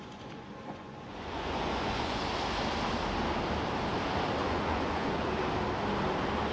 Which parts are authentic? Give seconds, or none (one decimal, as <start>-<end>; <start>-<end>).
2.2-4.4; 5.4-6.5